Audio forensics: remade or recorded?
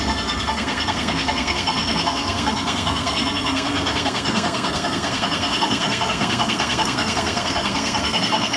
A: remade